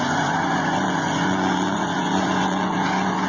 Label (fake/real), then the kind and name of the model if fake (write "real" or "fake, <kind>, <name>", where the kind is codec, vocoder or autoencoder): fake, vocoder, Vocos